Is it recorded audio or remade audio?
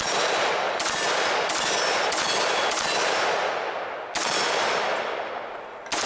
recorded